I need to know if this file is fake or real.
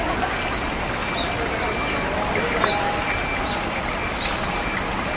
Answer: real